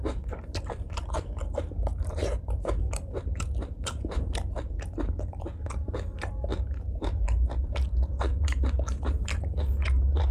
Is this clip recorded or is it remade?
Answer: remade